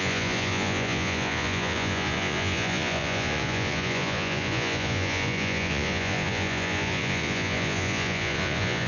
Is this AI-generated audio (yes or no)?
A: yes